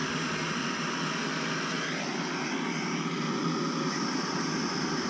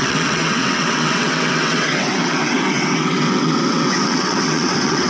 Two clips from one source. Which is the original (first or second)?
first